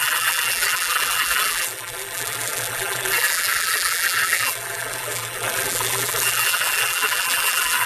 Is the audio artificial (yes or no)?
yes